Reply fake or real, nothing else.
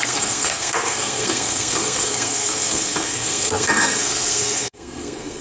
fake